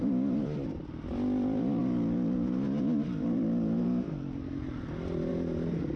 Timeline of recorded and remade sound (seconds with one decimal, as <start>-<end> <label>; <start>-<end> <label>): 0.0-6.0 recorded